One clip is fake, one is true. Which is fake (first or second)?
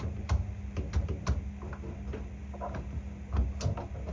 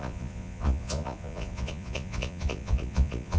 second